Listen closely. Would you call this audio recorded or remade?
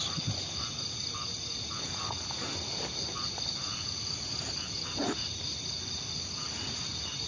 recorded